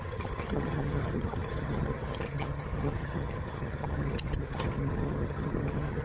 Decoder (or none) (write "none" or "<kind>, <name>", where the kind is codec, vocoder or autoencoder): vocoder, HiFi-GAN